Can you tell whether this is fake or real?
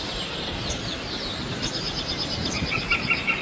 real